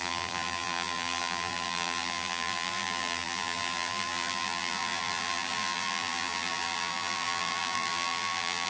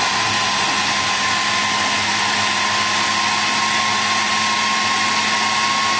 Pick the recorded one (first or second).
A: second